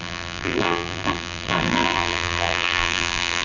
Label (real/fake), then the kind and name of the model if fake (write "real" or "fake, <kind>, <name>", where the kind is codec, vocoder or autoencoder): fake, vocoder, BigVGAN v2